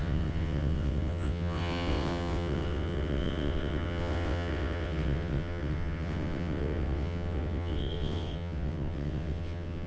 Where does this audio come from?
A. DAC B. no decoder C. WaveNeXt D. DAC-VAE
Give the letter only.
C